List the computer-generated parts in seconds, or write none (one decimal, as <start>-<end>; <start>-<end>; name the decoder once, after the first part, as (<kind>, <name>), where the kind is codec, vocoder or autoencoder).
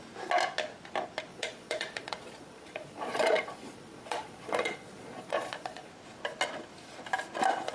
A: 1.3-5.9 (vocoder, Vocos)